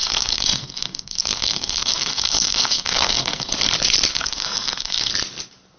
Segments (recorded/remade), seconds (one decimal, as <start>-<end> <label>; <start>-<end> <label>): 0.0-3.5 remade; 3.5-4.1 recorded; 4.1-5.1 remade; 5.1-5.8 recorded